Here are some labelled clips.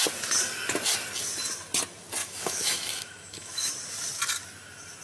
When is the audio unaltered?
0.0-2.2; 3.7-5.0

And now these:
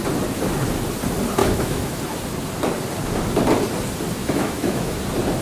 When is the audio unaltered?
0.0-1.4; 2.0-4.2; 5.0-5.4

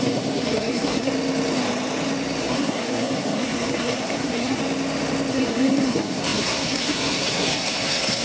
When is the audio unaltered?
1.1-2.4; 4.6-5.3